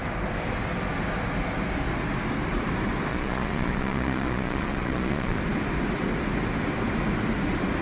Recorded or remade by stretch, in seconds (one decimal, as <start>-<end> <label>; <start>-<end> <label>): 0.0-3.1 recorded; 3.1-5.4 remade; 5.4-7.8 recorded